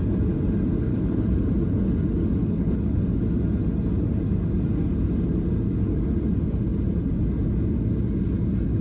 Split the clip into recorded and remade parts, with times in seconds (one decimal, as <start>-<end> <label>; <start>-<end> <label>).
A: 0.0-0.9 recorded; 0.9-1.4 remade; 1.4-2.4 recorded; 2.4-3.0 remade; 3.0-8.8 recorded